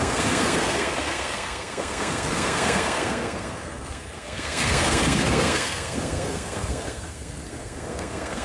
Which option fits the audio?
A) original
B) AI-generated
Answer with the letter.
B